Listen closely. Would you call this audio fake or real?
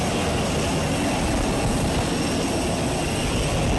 real